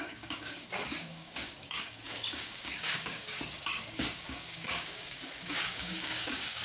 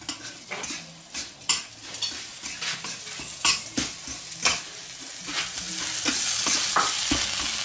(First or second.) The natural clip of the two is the second